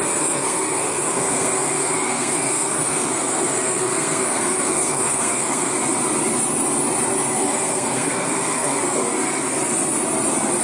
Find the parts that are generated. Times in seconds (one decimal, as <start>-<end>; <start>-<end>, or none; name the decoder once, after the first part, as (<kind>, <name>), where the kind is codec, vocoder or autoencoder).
0.0-5.7 (codec, SNAC); 7.3-8.8